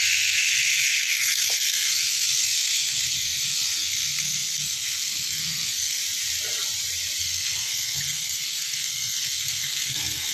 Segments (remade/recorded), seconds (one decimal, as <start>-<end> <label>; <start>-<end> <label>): 0.0-6.0 remade; 6.0-7.2 recorded; 7.2-10.3 remade